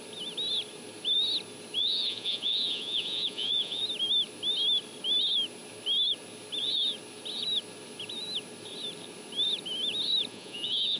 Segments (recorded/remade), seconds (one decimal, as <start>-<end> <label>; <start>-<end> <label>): 0.0-1.8 recorded; 1.8-3.8 remade; 3.8-10.3 recorded; 10.3-11.0 remade